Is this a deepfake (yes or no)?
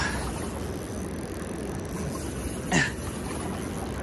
no